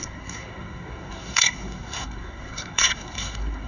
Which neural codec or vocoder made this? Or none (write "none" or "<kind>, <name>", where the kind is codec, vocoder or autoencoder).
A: codec, SNAC